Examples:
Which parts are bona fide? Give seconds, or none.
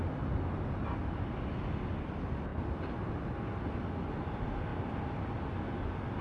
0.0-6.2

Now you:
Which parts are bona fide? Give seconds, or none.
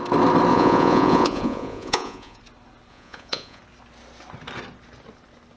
0.0-0.5; 2.4-2.9; 3.6-5.6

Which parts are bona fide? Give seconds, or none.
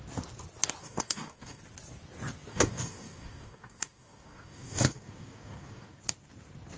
0.0-0.8; 1.6-2.5; 6.0-6.8